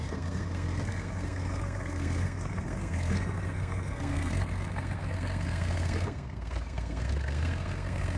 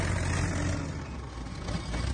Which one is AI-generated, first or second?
first